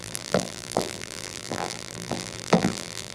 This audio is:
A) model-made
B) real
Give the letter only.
A